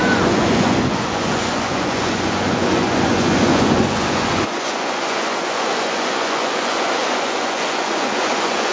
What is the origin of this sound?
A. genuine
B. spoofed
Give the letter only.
B